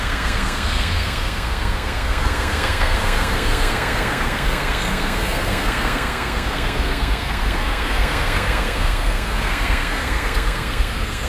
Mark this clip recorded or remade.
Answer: remade